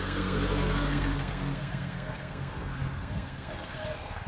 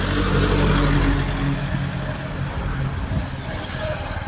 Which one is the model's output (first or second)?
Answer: first